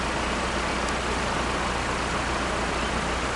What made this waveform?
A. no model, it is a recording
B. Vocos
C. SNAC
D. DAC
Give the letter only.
A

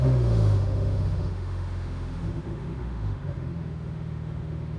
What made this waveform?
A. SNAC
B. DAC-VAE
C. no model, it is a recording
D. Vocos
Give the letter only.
B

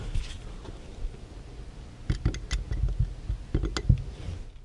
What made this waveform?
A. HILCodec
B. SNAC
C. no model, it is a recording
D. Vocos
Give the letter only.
C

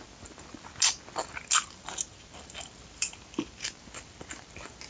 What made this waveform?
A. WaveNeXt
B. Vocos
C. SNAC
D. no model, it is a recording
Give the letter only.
D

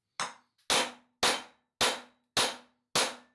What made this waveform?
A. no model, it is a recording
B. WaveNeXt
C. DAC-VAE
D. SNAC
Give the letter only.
A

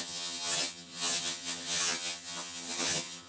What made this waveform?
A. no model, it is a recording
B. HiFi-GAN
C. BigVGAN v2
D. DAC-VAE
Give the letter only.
B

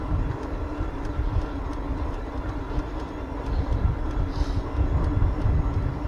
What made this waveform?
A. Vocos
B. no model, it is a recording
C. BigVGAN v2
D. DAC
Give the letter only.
B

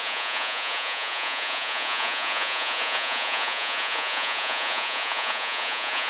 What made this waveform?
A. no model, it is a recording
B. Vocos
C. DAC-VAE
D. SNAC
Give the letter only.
B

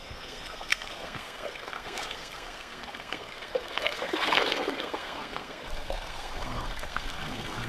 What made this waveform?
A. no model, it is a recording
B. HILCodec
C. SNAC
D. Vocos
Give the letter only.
C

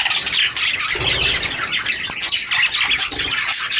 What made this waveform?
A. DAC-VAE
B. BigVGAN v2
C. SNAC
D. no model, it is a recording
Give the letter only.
D